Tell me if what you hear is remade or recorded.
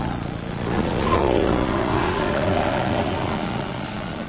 remade